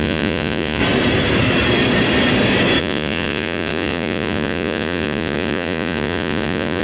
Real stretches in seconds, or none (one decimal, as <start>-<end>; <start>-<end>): 0.8-2.8